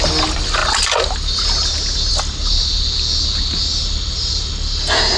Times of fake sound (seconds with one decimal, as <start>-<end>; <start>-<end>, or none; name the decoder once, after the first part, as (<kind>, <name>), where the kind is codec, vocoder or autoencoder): none